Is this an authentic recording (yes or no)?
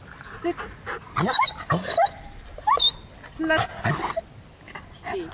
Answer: yes